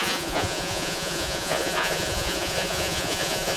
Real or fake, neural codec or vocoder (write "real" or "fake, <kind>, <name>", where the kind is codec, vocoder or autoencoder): fake, vocoder, Vocos